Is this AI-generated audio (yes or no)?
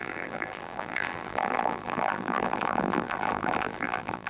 yes